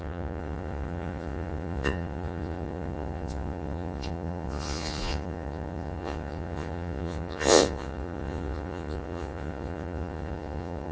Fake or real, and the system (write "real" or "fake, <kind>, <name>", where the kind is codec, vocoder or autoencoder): fake, vocoder, Vocos